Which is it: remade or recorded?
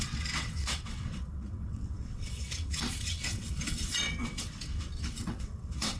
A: remade